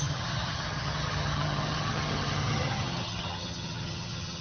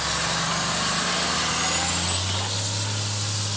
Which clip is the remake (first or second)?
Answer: first